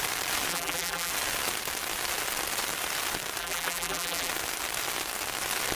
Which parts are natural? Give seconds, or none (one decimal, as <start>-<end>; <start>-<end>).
0.0-0.5; 1.1-3.4; 4.3-5.8